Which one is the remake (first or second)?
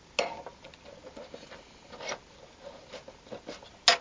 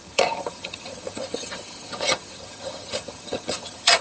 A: second